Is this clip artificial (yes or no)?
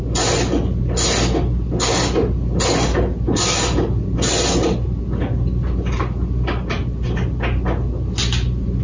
no